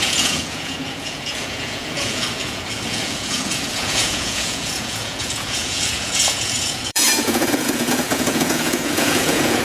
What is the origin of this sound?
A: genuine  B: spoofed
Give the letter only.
B